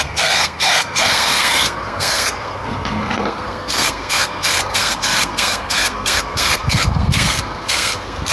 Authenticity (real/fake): fake